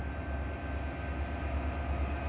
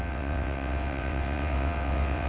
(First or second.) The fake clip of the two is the second